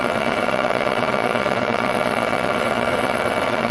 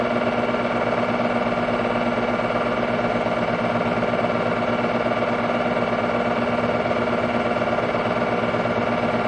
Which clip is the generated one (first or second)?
first